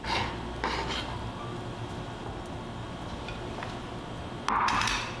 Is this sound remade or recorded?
recorded